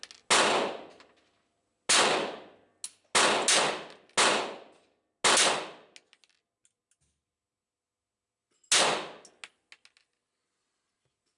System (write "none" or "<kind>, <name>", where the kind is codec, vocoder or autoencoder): none